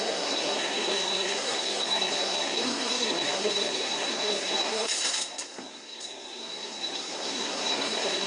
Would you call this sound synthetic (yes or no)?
yes